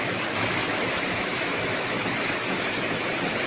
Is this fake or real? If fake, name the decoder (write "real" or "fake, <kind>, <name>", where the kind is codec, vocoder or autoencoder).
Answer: fake, autoencoder, DAC-VAE